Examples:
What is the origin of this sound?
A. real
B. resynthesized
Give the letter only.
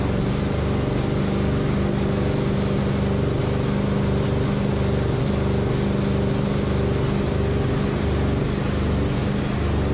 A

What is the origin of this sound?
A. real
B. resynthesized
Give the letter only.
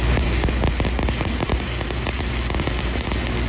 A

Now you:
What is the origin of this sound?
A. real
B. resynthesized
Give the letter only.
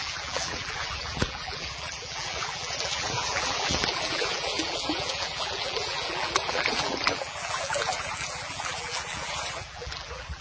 B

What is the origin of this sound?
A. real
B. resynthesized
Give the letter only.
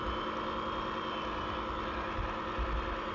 A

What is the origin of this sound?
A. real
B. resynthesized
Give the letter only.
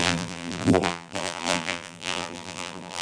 B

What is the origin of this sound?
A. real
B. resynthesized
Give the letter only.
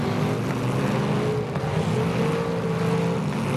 A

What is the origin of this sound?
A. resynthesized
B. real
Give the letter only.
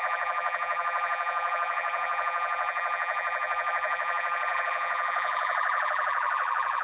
A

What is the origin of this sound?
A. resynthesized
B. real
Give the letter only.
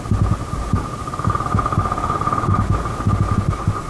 B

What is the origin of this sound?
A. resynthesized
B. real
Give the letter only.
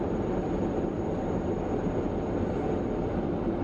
A